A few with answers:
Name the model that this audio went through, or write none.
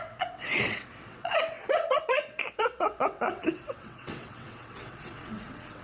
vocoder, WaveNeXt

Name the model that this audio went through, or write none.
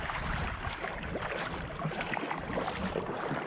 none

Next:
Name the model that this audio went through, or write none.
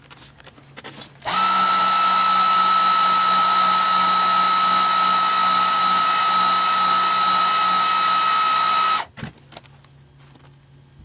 none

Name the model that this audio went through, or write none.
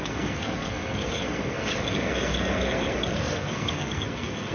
codec, SNAC